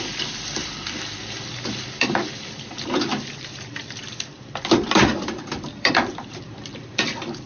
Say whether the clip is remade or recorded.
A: remade